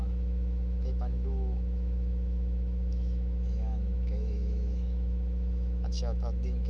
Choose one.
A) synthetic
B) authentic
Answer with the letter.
A